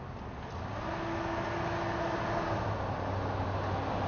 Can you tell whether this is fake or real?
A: real